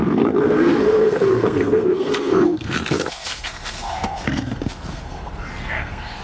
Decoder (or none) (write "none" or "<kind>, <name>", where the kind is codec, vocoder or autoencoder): codec, SNAC